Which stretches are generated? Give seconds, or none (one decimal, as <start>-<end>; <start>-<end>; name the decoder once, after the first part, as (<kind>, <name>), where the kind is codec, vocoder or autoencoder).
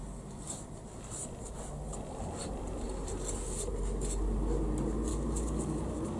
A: 5.1-6.2 (codec, DAC)